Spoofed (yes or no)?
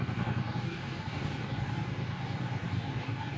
yes